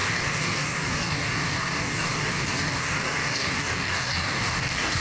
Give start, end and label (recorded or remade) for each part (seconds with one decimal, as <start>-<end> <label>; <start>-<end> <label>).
0.0-5.0 remade